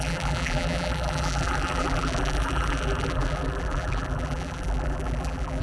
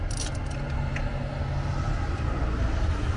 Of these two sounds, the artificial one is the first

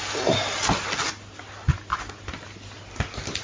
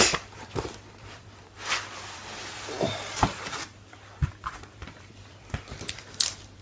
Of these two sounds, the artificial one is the second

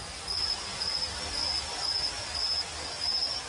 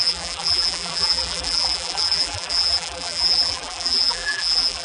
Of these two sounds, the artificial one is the second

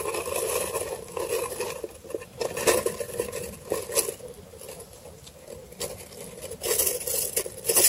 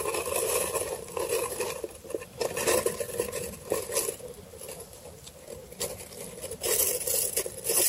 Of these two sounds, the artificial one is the second